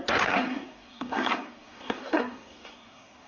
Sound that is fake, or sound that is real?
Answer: fake